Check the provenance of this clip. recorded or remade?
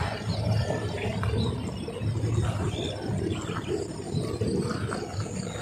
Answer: recorded